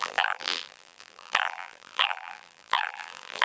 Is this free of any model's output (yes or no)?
no